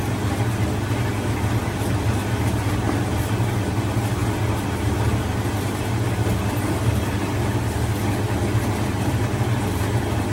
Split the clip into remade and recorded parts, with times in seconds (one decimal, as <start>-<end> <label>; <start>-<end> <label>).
0.0-10.3 recorded